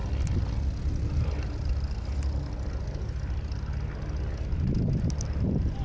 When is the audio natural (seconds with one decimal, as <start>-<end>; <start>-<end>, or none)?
0.0-5.8